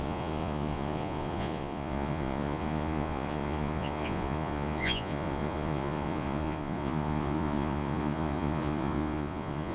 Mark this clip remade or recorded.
remade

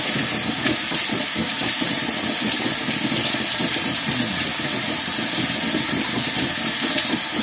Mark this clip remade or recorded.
recorded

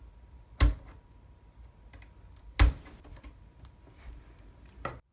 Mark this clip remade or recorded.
recorded